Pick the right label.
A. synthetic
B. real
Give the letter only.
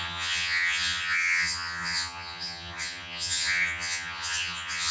A